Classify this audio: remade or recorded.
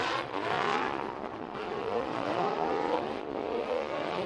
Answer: remade